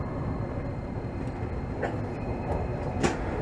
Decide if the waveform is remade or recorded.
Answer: remade